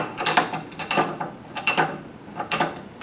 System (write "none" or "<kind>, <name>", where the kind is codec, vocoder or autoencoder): none